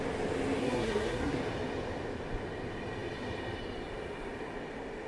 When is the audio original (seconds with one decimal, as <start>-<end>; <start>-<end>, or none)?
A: 0.0-0.6; 1.4-5.1

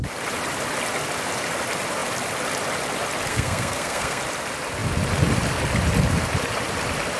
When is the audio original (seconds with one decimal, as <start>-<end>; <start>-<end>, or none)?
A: 0.0-3.3; 4.2-7.2

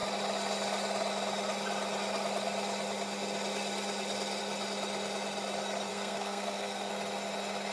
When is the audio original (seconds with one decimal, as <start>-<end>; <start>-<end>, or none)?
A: 0.0-5.9; 6.9-7.7

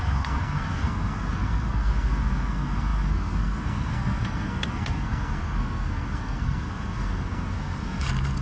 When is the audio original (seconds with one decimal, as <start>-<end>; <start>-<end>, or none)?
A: none

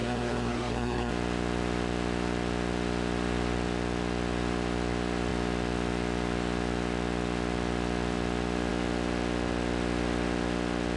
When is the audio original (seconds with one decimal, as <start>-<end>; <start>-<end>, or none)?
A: 1.1-11.0

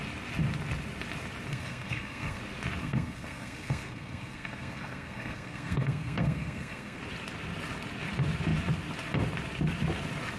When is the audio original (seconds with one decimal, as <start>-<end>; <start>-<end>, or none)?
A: 0.0-1.5; 2.4-2.8; 7.0-10.4

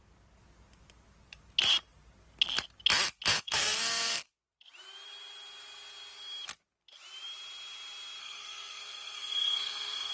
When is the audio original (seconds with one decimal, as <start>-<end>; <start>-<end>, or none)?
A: 0.0-3.3; 4.3-8.2